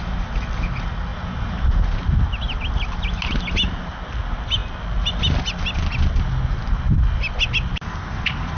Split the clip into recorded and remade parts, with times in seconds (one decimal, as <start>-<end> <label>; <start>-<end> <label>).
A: 0.0-1.1 recorded; 1.1-1.7 remade; 1.7-8.6 recorded